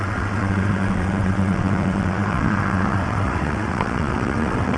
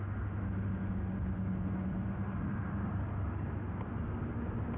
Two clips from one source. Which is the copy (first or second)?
first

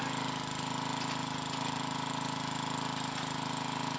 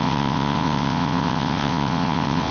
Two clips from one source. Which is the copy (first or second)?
second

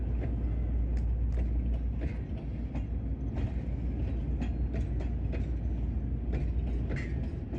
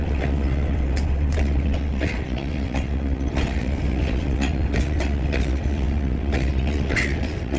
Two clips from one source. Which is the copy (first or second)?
second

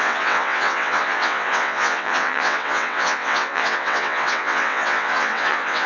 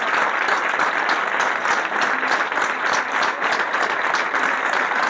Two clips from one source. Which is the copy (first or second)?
first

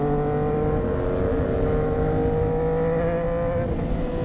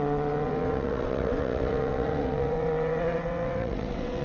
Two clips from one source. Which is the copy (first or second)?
second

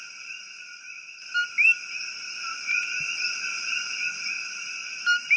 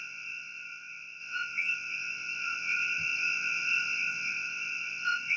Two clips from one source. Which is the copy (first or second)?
second